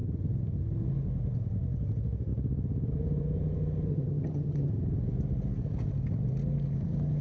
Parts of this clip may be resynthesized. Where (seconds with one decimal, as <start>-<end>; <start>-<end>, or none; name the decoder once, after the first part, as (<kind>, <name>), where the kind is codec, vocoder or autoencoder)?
3.9-4.7 (vocoder, HiFi-GAN)